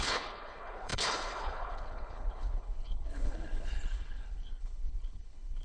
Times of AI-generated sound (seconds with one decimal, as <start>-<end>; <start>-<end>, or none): 0.0-5.6